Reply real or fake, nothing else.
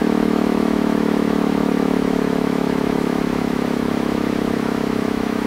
fake